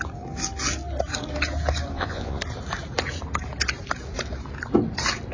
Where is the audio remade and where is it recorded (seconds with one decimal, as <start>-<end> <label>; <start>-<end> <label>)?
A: 0.0-1.9 recorded; 1.9-2.4 remade; 2.4-5.3 recorded

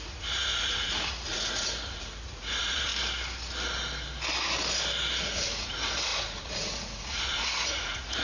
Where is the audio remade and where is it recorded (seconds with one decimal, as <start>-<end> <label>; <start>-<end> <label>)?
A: 0.0-2.9 remade; 2.9-5.2 recorded; 5.2-8.2 remade

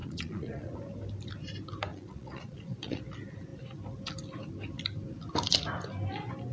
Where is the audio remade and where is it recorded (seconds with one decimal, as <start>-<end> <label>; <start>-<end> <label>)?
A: 0.0-0.7 remade; 0.7-1.9 recorded; 1.9-3.0 remade; 3.0-6.5 recorded

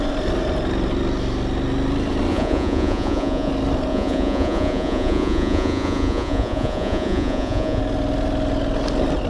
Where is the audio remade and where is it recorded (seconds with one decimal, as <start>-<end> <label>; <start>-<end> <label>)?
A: 0.0-2.3 recorded; 2.3-3.5 remade; 3.5-3.9 recorded; 3.9-7.8 remade; 7.8-9.3 recorded

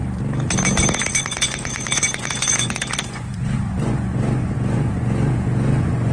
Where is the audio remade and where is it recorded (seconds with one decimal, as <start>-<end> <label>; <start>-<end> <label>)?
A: 0.0-1.1 recorded; 1.1-6.1 remade

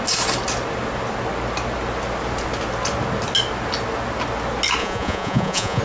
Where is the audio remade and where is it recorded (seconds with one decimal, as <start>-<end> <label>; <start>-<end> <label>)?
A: 0.0-4.8 recorded; 4.8-5.8 remade